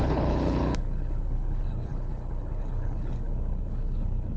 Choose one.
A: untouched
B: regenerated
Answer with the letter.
B